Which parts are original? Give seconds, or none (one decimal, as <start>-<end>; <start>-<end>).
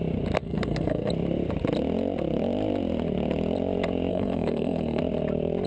0.0-0.4; 1.1-4.1; 5.0-5.7